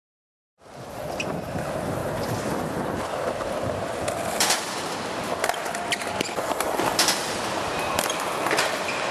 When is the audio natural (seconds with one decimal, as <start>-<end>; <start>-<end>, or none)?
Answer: 0.0-1.4; 7.2-8.1